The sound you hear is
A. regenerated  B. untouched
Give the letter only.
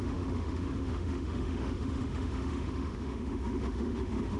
A